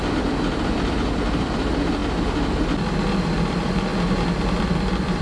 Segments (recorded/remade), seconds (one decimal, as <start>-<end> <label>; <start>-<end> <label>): 0.0-2.0 remade; 2.0-3.1 recorded; 3.1-3.9 remade; 3.9-4.6 recorded; 4.6-5.2 remade